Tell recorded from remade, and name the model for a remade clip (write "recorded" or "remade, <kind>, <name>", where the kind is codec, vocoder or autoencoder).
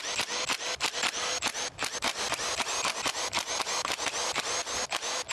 recorded